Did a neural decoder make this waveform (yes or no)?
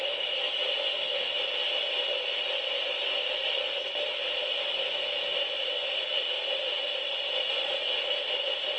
no